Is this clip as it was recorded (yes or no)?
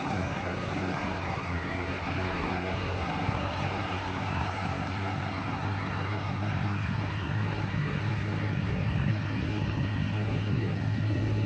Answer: no